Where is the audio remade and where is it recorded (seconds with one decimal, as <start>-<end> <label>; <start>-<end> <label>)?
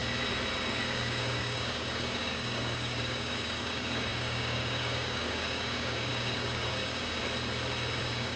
0.0-0.7 recorded; 0.7-7.2 remade; 7.2-8.0 recorded; 8.0-8.4 remade